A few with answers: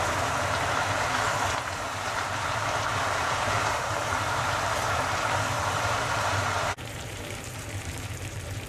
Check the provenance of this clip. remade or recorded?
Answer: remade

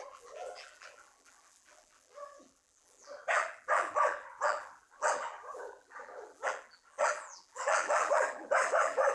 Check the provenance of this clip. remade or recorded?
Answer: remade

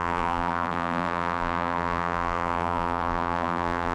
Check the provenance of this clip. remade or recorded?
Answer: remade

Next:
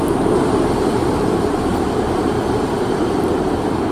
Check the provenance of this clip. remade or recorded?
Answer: remade